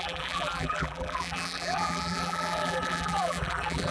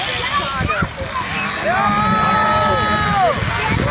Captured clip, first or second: second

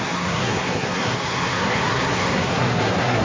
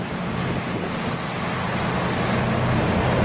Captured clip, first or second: second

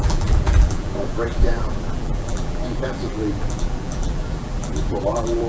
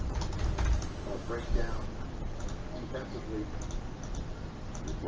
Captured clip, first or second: second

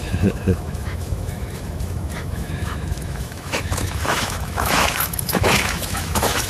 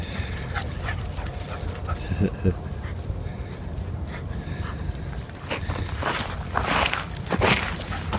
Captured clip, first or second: second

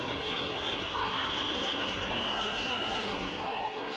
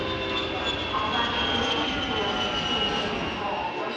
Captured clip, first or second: second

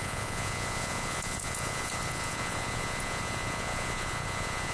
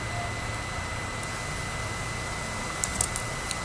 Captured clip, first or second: second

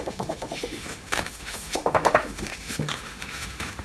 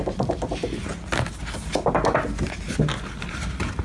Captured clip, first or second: second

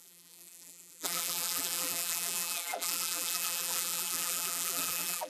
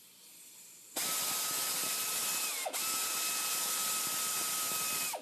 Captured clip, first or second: second